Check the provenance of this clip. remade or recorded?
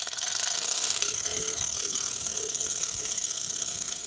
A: remade